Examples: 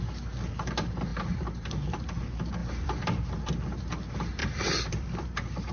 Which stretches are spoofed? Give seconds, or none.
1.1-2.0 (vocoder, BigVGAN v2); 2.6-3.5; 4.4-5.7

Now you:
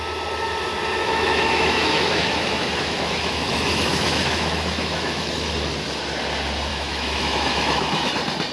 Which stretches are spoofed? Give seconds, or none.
1.0-5.3 (autoencoder, DAC-VAE); 6.7-8.1

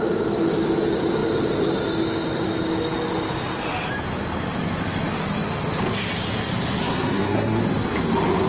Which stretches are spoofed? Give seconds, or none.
6.8-7.6 (codec, SNAC)

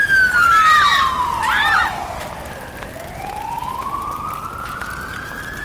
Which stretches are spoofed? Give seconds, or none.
none

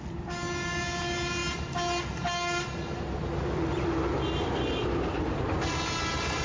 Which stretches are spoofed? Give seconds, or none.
none

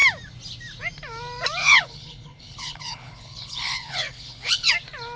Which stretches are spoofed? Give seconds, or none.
1.6-4.7 (codec, HILCodec)